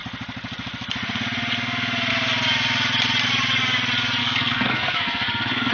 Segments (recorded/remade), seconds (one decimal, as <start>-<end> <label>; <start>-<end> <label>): 0.0-4.2 recorded; 4.2-5.7 remade